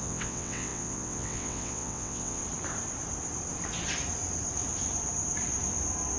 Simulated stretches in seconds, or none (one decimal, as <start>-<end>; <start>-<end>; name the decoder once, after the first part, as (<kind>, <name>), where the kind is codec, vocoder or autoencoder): 0.0-2.4 (vocoder, WaveNeXt)